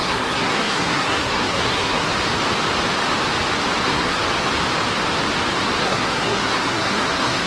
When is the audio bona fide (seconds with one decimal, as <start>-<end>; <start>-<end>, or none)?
2.1-3.8; 4.2-5.8